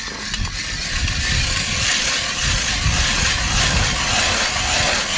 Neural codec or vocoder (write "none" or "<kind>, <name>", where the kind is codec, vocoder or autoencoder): none